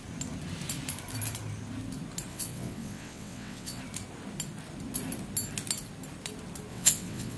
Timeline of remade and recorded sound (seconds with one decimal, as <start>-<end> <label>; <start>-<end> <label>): 0.0-2.3 recorded; 2.3-3.8 remade; 3.8-6.7 recorded; 6.7-7.4 remade